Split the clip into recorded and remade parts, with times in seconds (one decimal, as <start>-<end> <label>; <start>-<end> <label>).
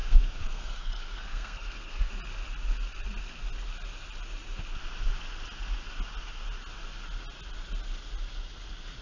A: 0.0-2.1 remade; 2.1-9.0 recorded